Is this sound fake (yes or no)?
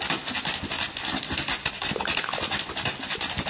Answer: yes